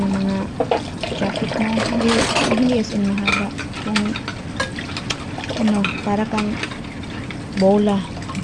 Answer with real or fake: real